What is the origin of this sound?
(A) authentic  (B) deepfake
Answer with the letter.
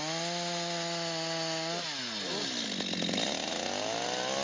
A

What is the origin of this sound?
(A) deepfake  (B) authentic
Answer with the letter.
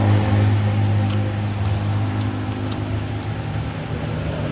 B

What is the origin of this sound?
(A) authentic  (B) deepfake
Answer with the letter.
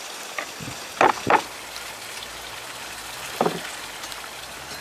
A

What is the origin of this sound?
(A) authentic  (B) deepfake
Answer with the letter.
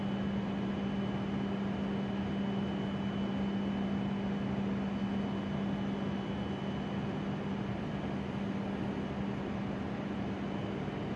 A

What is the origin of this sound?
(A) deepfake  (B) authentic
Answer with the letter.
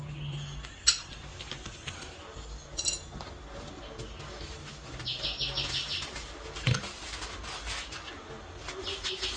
B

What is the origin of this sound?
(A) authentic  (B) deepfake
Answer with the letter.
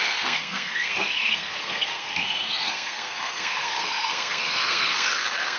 B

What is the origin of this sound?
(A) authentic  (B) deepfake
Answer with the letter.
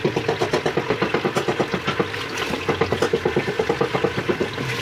A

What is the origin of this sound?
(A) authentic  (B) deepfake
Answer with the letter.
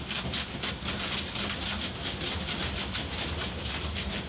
A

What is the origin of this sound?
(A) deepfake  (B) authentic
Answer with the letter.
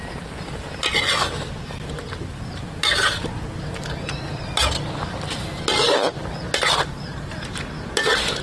B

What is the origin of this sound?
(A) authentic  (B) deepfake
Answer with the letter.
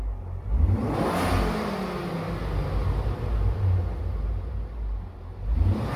A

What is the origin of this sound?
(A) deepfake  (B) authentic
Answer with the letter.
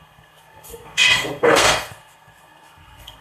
A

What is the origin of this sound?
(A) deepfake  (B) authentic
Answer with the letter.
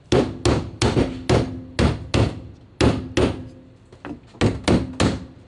B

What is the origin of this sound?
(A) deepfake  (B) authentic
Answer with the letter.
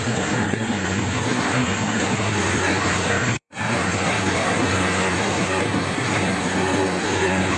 A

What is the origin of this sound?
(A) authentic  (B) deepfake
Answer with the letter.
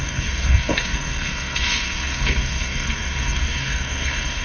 B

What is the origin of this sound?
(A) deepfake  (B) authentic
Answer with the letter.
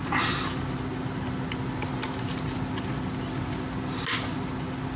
B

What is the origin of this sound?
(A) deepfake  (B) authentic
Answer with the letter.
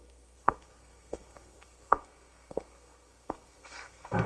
A